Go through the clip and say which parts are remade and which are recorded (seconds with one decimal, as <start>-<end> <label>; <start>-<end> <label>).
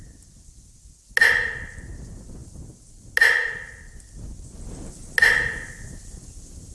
0.0-6.7 recorded